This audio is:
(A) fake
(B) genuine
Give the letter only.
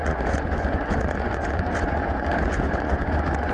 A